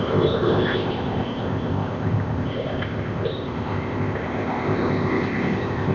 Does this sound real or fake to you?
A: fake